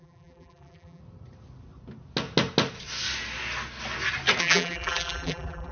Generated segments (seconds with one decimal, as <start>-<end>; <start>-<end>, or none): 0.0-1.0; 4.4-5.7